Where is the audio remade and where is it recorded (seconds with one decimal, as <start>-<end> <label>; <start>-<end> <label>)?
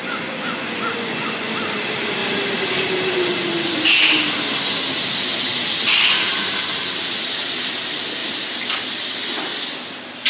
0.0-1.5 remade; 1.5-10.3 recorded